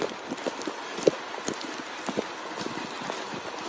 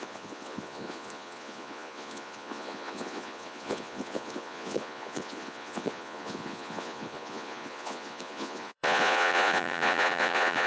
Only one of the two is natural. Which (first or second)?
first